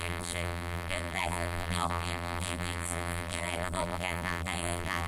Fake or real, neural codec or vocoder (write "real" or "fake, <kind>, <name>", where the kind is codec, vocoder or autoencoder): fake, vocoder, BigVGAN v2